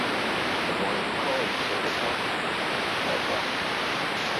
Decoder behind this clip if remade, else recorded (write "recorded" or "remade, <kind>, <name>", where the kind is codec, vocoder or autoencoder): remade, vocoder, BigVGAN v2